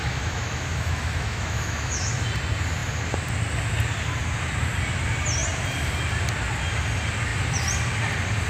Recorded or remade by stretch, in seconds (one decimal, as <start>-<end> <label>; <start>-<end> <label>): 0.0-2.1 remade; 2.1-8.5 recorded